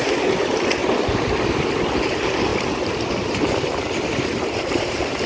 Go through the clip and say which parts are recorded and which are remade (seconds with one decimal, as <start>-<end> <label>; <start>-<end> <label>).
0.0-0.8 remade; 0.8-2.1 recorded; 2.1-2.5 remade; 2.5-4.7 recorded; 4.7-5.3 remade